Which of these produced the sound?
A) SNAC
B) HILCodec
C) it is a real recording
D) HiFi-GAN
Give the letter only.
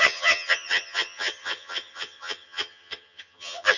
D